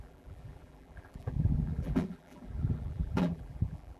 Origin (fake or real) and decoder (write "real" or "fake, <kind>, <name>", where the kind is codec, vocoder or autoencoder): fake, vocoder, BigVGAN v2